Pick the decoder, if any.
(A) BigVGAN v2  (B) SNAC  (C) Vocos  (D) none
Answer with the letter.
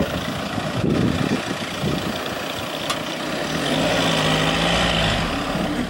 D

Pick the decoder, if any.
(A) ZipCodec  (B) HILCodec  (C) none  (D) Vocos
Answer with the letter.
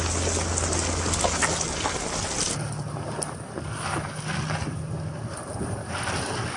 C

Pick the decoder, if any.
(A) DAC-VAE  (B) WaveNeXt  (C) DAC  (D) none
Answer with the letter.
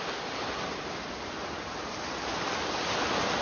D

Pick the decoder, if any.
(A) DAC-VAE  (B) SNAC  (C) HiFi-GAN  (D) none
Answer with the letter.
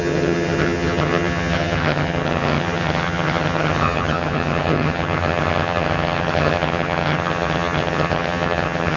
C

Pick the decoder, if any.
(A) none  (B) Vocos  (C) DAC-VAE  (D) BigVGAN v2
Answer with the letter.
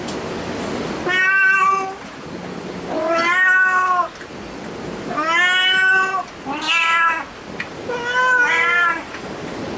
A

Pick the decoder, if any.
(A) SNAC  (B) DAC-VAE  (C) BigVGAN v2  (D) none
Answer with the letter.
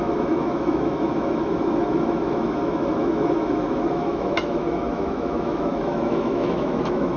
B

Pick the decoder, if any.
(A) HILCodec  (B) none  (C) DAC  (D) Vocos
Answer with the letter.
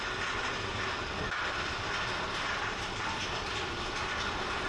B